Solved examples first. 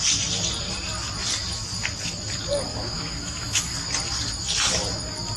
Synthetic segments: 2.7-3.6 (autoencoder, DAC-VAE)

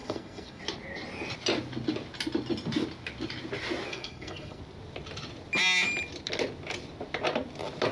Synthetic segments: 0.0-0.6 (codec, SNAC); 3.9-4.6

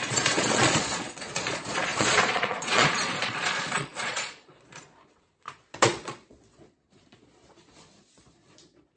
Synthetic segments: 0.0-9.0 (vocoder, Vocos)

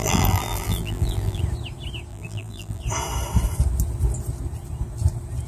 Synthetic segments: 0.0-1.4 (vocoder, BigVGAN v2); 2.1-2.8

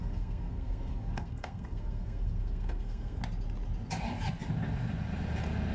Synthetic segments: 0.0-3.2 (codec, SNAC)

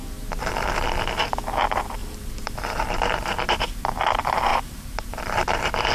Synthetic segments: 0.0-0.5 (vocoder, BigVGAN v2); 2.0-3.6; 4.5-5.9

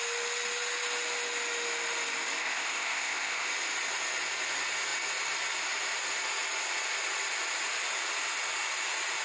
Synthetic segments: 2.4-3.5 (codec, ZipCodec)